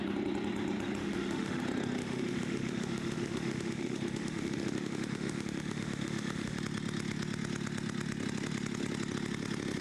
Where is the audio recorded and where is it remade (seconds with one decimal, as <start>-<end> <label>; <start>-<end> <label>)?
0.0-1.0 recorded; 1.0-1.6 remade; 1.6-2.0 recorded; 2.0-6.6 remade; 6.6-9.8 recorded